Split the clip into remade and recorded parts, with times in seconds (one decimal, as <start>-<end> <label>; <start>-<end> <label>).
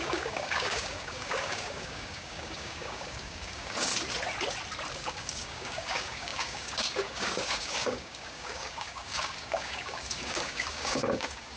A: 0.0-3.9 remade; 3.9-4.9 recorded; 4.9-11.6 remade